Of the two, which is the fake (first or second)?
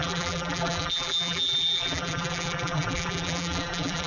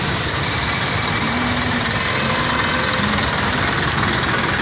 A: first